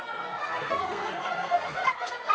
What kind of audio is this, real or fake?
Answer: fake